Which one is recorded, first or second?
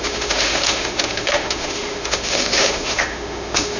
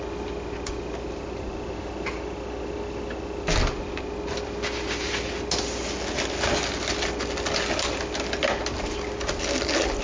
second